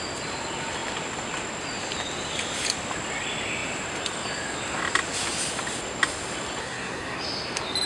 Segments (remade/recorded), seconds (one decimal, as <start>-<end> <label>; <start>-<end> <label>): 0.0-6.6 recorded; 6.6-7.2 remade; 7.2-7.9 recorded